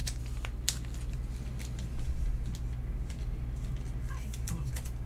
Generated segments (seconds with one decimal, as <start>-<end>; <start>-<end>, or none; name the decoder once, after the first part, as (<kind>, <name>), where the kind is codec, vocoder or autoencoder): none